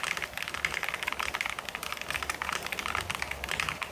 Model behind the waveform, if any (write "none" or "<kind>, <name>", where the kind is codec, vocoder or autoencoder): none